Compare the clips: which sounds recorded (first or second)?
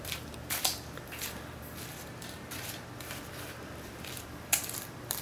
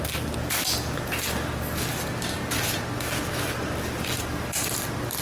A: second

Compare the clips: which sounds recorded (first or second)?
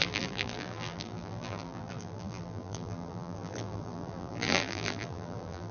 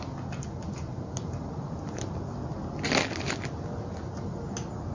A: second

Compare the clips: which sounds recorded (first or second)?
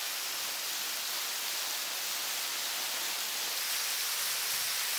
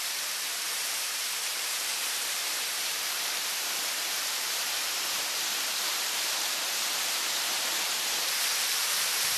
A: first